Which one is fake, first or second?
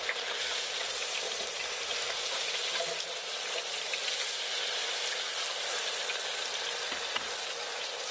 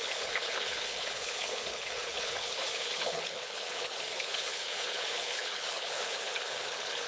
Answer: second